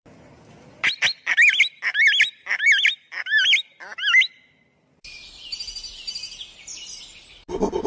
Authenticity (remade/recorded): recorded